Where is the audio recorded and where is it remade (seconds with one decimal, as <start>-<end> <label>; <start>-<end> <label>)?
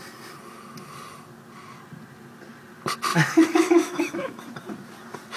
0.0-3.1 recorded; 3.1-4.4 remade; 4.4-5.4 recorded